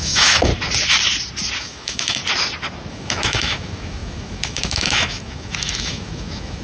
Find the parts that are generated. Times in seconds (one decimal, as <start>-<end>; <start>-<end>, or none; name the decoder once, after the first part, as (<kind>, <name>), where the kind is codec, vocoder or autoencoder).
0.0-0.5 (autoencoder, DAC-VAE); 1.6-2.2; 2.9-6.6